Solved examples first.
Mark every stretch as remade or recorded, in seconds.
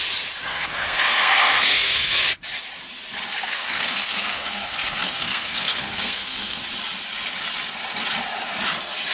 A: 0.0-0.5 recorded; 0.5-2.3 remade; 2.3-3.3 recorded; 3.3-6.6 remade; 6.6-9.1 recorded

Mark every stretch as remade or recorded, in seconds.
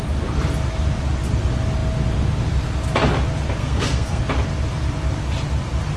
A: 0.0-3.6 recorded; 3.6-4.2 remade; 4.2-6.0 recorded